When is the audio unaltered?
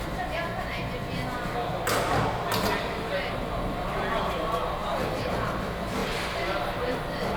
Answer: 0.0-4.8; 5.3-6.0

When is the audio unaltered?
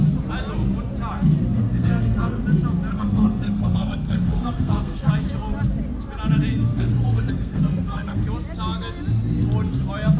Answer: 0.0-1.6; 2.4-2.9; 5.1-6.7; 8.2-10.2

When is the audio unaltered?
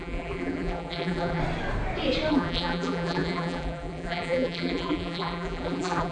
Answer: 1.4-2.3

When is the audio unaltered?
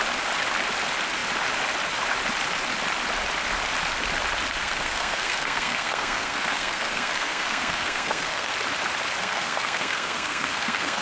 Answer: 0.0-4.6; 8.5-9.2